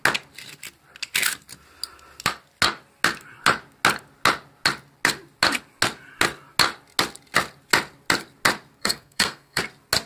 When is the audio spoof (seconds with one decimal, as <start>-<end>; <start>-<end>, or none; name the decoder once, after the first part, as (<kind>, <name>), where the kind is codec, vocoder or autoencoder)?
8.8-9.6 (codec, SNAC)